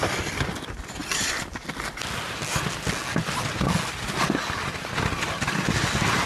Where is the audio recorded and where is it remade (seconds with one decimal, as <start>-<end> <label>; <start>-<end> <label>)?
0.0-6.3 recorded